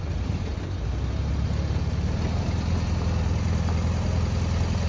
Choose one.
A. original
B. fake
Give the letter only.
A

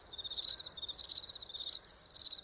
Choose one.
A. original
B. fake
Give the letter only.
A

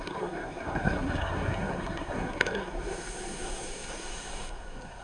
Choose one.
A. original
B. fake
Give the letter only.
B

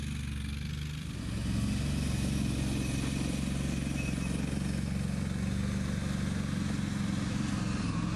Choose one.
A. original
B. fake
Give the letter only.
A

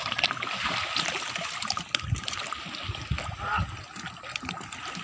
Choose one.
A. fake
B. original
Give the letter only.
B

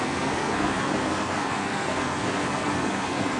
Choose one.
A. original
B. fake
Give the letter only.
B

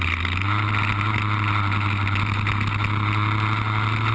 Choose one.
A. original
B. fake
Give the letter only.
A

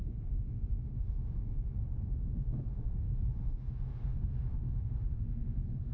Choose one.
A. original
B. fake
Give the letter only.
B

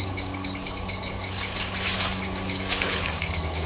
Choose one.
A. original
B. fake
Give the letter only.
B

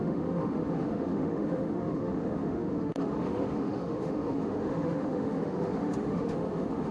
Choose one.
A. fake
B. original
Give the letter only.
A